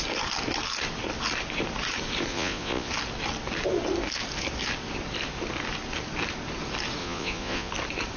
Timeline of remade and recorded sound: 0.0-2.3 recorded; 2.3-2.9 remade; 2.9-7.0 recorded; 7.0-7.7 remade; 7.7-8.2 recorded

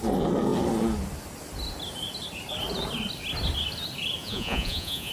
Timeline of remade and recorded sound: 0.0-4.2 recorded; 4.2-5.1 remade

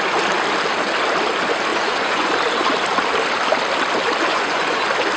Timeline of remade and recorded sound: 0.0-1.7 recorded; 1.7-2.3 remade; 2.3-4.3 recorded; 4.3-4.8 remade; 4.8-5.2 recorded

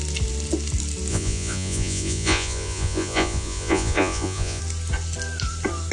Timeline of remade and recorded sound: 0.0-1.1 recorded; 1.1-4.6 remade; 4.6-5.9 recorded

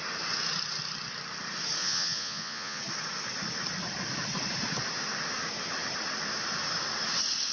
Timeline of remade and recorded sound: 0.0-1.8 recorded; 1.8-2.8 remade; 2.8-7.5 recorded

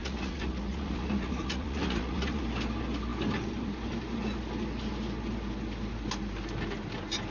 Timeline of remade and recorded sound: 0.0-2.4 remade; 2.4-7.3 recorded

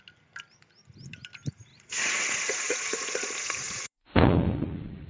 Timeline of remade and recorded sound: 0.0-1.7 recorded; 1.7-5.1 remade